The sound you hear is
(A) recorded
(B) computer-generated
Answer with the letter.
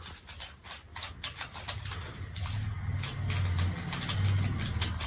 A